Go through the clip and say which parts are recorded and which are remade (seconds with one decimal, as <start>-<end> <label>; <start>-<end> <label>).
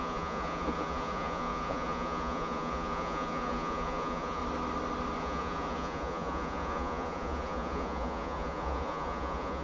0.0-4.4 remade; 4.4-5.2 recorded; 5.2-9.6 remade